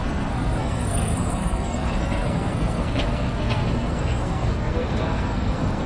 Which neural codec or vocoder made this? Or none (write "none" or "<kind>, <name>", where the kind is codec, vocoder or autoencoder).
codec, SNAC